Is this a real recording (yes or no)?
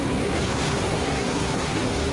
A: no